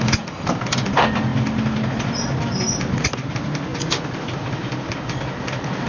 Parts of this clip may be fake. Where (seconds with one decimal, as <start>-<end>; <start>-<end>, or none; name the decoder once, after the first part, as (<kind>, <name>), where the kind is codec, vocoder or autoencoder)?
none